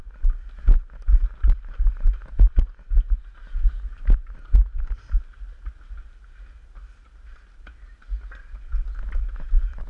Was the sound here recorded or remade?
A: recorded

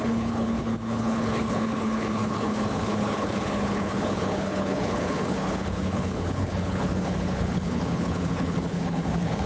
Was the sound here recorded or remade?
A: remade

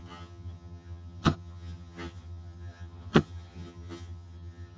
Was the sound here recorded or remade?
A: remade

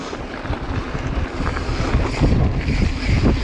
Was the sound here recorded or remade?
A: recorded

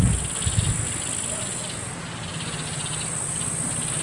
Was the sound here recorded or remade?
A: recorded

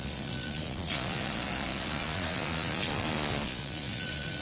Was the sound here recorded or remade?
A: remade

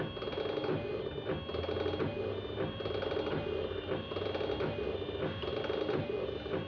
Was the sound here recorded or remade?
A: recorded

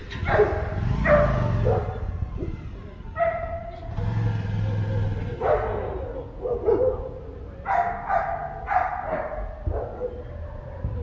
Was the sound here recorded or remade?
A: recorded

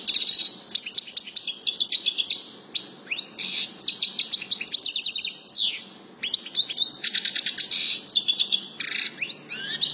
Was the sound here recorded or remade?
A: recorded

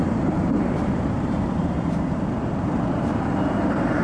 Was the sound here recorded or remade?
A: remade